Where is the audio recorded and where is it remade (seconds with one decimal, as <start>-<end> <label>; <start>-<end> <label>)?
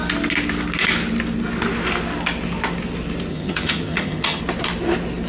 0.0-3.3 recorded; 3.3-4.4 remade; 4.4-5.3 recorded